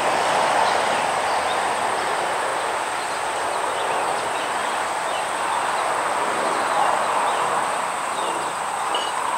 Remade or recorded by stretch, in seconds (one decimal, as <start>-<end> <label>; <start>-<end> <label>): 0.0-9.4 recorded